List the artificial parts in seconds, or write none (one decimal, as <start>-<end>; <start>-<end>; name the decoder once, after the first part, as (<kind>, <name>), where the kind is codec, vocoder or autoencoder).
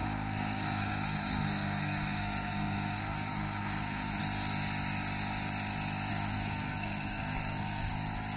0.0-4.2 (codec, SNAC); 6.1-7.9